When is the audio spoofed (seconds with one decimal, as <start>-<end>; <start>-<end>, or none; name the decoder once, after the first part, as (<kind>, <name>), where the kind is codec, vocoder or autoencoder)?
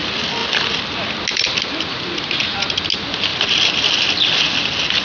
none